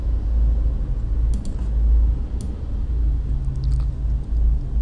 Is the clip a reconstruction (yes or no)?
no